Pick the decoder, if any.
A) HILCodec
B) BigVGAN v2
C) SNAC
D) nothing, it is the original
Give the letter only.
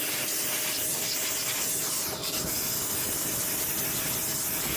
D